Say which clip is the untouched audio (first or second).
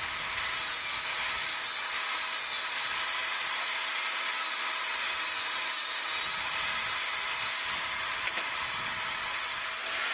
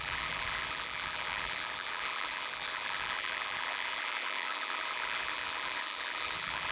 first